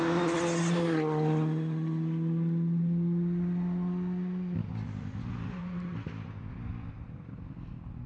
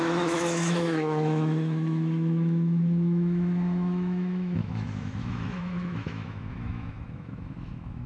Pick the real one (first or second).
first